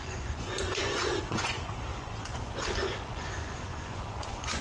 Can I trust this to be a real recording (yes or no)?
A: no